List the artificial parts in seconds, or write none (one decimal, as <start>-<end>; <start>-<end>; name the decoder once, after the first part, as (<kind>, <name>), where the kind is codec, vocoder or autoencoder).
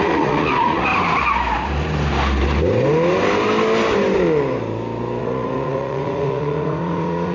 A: 0.0-0.9 (vocoder, Vocos); 5.2-7.3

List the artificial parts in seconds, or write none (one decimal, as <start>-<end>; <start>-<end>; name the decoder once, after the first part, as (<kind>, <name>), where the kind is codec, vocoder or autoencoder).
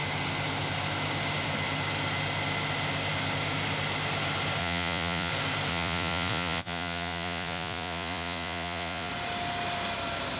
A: 4.6-5.3 (vocoder, Vocos); 5.7-9.1